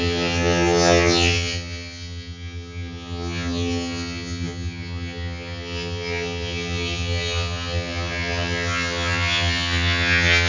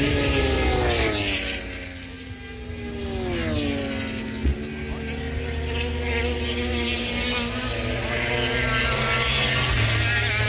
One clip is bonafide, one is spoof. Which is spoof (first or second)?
first